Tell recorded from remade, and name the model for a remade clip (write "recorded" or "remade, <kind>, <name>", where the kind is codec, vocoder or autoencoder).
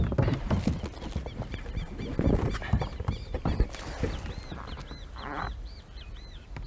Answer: recorded